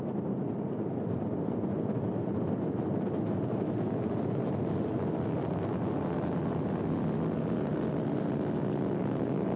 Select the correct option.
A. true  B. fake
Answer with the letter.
A